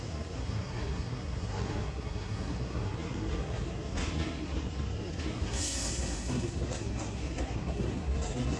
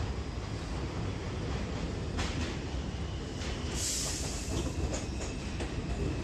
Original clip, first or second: second